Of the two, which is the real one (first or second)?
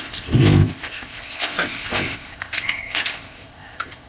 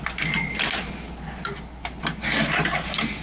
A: second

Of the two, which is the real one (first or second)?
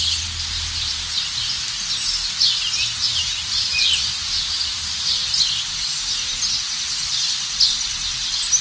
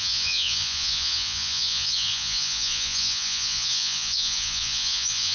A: first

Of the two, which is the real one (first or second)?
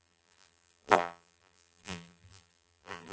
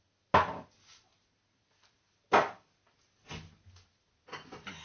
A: second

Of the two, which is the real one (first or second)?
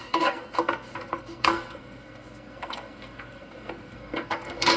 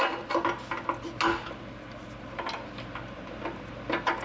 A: second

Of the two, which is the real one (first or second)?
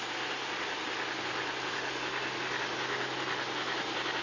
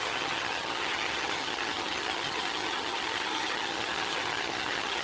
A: first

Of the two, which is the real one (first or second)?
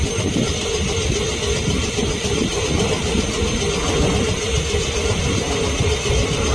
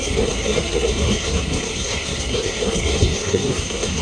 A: first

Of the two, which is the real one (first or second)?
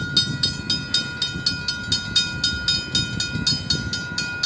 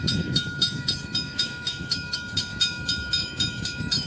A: first